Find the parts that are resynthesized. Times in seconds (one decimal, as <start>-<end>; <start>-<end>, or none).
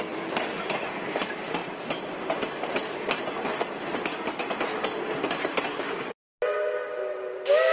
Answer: 5.7-6.2